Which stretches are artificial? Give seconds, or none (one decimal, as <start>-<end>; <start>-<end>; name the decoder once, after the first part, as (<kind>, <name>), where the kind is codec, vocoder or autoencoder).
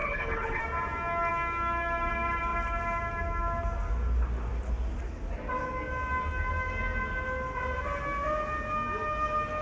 0.0-0.6 (codec, HILCodec)